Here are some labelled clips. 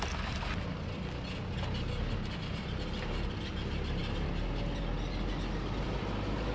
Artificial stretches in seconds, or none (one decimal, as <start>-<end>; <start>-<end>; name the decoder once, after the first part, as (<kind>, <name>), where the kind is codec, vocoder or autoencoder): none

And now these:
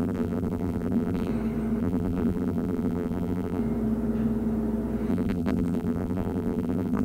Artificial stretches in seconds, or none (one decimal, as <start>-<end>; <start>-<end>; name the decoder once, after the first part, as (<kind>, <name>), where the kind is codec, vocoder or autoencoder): 0.0-1.3 (vocoder, BigVGAN v2); 1.8-3.6; 5.1-7.0

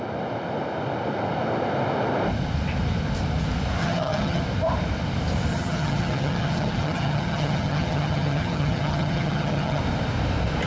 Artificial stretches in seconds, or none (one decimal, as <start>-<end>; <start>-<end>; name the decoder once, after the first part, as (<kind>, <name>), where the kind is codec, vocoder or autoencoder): 3.8-4.4 (vocoder, HiFi-GAN); 5.5-9.8